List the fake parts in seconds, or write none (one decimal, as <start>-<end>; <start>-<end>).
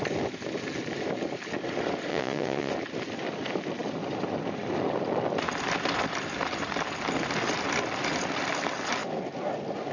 2.1-2.7